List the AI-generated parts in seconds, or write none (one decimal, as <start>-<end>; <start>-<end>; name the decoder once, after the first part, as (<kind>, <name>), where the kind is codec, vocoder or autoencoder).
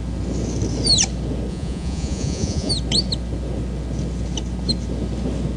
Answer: 1.5-2.7 (vocoder, Vocos)